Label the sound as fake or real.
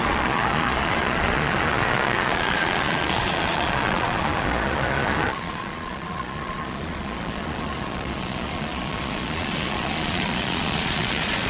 fake